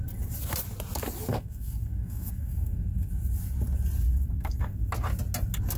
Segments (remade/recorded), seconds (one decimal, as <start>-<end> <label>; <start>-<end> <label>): 0.0-1.3 recorded; 1.3-3.1 remade; 3.1-4.1 recorded; 4.1-4.9 remade; 4.9-5.8 recorded